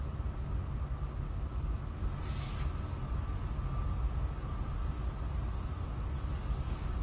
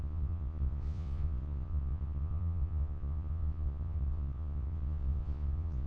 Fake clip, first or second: second